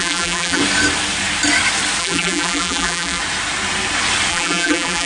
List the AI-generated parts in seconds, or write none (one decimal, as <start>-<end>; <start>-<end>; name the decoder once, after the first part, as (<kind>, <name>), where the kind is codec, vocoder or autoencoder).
0.0-0.6 (vocoder, BigVGAN v2); 2.0-3.2; 4.3-5.1